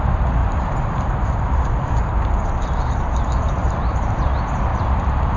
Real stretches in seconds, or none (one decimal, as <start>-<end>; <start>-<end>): 0.0-0.4; 2.2-3.6; 4.2-4.7